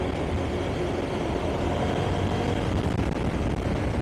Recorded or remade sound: recorded